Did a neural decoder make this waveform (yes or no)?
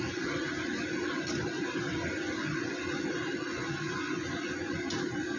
no